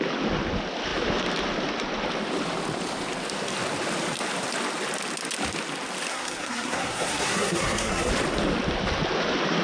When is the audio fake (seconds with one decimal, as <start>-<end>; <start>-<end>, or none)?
6.1-8.1